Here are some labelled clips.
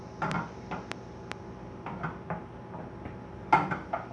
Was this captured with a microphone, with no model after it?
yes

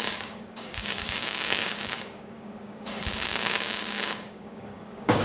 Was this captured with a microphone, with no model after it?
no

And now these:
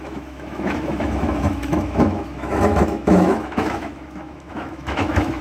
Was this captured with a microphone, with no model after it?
no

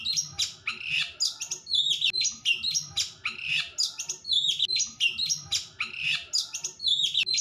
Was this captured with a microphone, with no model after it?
yes